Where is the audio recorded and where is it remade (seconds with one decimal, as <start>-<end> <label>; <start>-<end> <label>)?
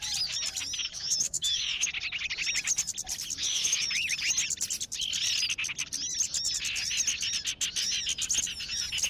0.0-0.8 recorded; 0.8-1.9 remade; 1.9-3.4 recorded; 3.4-3.9 remade; 3.9-9.1 recorded